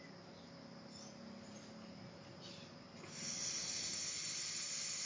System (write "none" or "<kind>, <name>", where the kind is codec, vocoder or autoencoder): none